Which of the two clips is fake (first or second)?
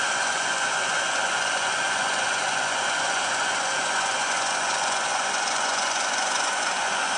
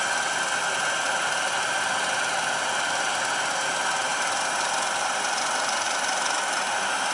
first